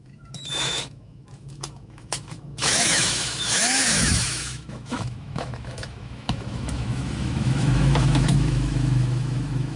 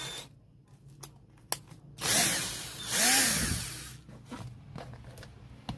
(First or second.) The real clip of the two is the second